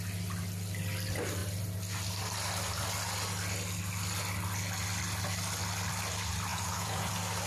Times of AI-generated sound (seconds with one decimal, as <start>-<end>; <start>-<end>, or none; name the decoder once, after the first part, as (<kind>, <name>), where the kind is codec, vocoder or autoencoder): 6.5-7.1 (vocoder, Vocos)